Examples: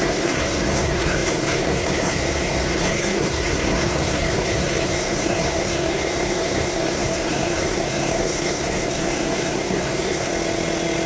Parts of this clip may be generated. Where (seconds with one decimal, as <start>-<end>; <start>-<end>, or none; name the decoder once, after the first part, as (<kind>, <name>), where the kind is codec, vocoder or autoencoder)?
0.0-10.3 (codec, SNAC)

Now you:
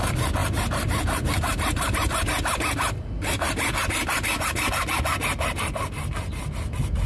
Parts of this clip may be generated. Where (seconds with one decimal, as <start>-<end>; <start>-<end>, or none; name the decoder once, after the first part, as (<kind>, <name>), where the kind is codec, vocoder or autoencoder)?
0.4-4.7 (vocoder, BigVGAN v2)

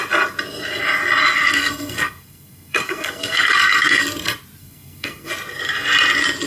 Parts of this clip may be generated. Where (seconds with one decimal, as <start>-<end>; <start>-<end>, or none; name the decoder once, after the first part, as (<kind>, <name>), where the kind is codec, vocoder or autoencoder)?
1.6-4.0 (codec, SNAC); 4.6-5.3